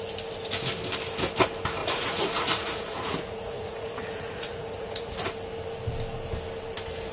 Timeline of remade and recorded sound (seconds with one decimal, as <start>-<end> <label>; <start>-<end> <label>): 0.0-1.8 recorded; 1.8-5.1 remade; 5.1-7.1 recorded